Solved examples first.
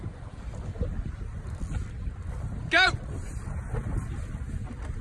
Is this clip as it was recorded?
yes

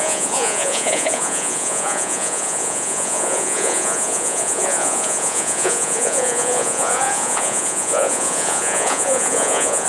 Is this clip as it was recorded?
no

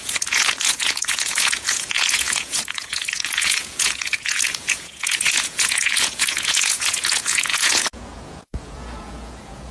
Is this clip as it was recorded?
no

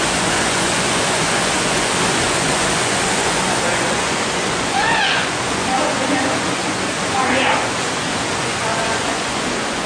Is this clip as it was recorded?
no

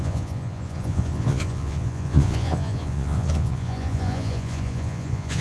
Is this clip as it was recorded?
no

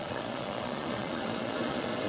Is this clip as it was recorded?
no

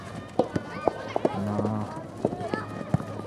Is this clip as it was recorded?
yes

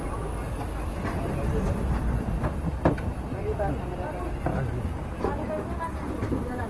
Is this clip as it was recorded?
yes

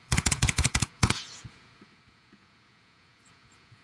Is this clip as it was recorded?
no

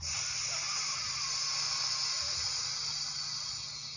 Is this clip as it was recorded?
yes